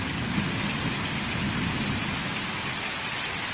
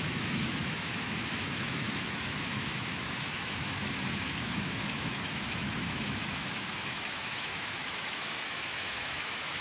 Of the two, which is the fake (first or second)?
second